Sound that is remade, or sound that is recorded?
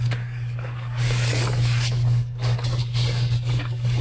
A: remade